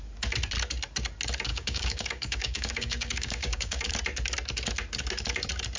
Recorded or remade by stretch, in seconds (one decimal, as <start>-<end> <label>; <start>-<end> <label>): 0.0-1.5 recorded; 1.5-3.9 remade; 3.9-5.8 recorded